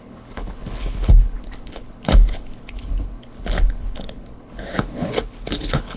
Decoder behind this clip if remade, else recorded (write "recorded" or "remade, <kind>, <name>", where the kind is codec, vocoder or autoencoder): remade, codec, HILCodec